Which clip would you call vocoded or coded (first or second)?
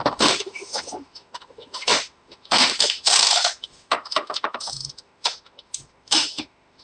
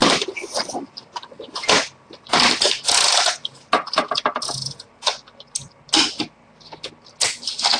first